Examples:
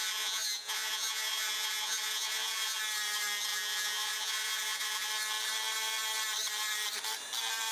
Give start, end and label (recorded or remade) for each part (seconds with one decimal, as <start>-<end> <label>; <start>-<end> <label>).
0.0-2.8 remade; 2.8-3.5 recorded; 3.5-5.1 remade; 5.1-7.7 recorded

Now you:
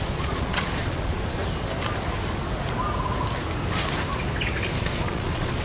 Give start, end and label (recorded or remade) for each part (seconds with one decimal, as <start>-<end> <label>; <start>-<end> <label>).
0.0-1.4 remade; 1.4-4.8 recorded; 4.8-5.6 remade

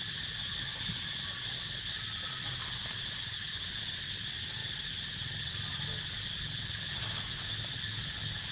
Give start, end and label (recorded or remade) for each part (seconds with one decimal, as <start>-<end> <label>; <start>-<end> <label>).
0.0-8.5 recorded

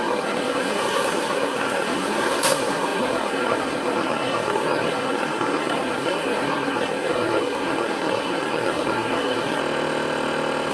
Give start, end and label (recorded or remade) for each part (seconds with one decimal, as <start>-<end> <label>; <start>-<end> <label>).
0.0-9.6 remade; 9.6-10.7 recorded

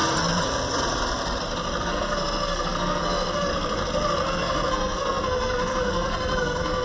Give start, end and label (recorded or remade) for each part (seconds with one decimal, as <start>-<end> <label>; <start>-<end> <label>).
0.0-1.8 recorded; 1.8-3.5 remade; 3.5-4.3 recorded; 4.3-6.8 remade